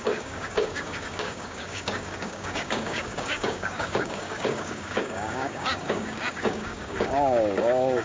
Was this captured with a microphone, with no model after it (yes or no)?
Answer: no